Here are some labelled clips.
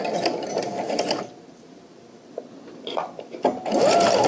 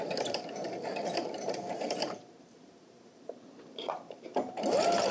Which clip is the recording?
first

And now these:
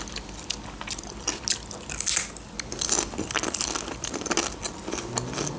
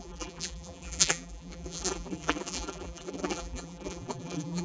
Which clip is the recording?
first